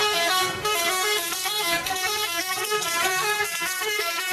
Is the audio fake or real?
fake